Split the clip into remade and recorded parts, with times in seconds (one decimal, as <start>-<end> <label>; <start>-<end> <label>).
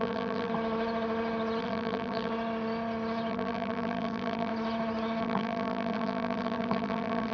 0.0-0.5 remade; 0.5-1.6 recorded; 1.6-2.3 remade; 2.3-3.3 recorded; 3.3-4.5 remade; 4.5-5.2 recorded; 5.2-7.3 remade